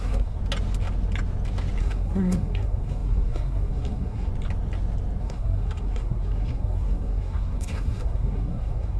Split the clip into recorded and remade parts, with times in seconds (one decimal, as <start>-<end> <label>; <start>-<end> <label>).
0.0-0.4 remade; 0.4-1.8 recorded; 1.8-4.3 remade; 4.3-5.2 recorded; 5.2-9.0 remade